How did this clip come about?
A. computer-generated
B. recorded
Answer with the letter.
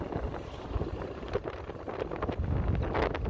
B